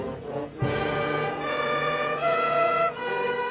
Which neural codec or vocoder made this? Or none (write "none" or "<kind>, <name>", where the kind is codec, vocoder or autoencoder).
vocoder, Vocos